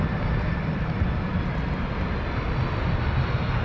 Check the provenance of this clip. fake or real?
real